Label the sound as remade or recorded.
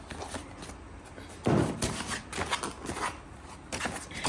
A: recorded